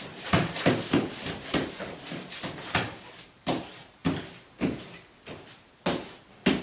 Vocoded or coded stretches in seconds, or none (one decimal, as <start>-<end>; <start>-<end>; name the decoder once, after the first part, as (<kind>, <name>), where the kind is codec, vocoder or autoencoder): 0.0-4.0 (vocoder, BigVGAN v2)